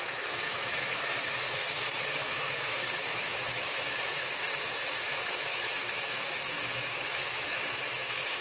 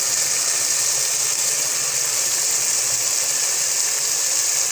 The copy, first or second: first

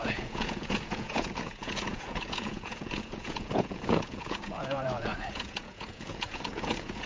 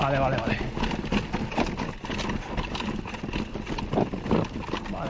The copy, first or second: first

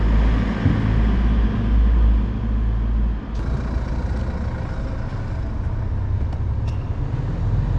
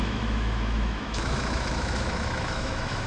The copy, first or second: second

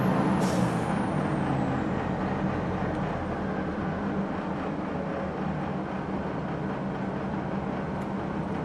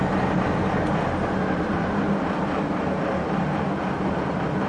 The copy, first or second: second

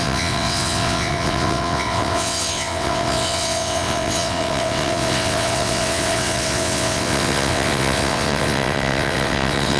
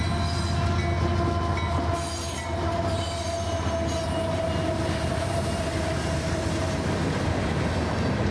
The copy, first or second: first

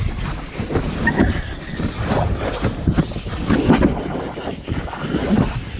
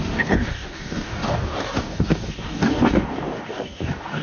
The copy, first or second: second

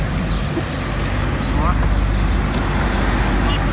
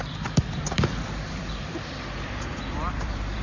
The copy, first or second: second